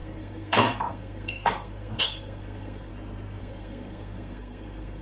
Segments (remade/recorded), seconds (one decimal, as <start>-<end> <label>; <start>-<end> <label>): 0.0-2.9 remade; 2.9-3.4 recorded; 3.4-5.0 remade